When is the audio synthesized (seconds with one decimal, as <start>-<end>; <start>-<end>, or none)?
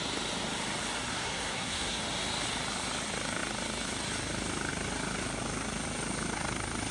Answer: 1.1-2.0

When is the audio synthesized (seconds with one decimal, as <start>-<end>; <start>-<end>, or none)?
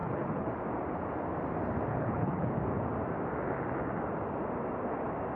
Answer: 0.0-0.5; 1.9-2.5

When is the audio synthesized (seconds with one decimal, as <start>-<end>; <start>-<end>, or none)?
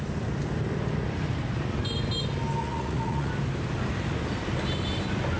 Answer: 2.6-3.3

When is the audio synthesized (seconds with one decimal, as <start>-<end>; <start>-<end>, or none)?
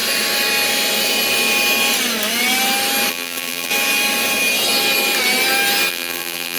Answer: 3.1-3.7; 5.9-6.6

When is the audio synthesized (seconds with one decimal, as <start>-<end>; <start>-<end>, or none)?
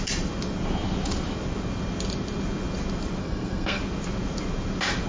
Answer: 3.2-3.8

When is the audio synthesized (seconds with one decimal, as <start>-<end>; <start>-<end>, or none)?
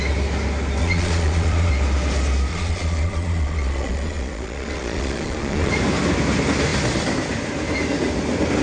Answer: 0.8-1.7; 2.5-5.7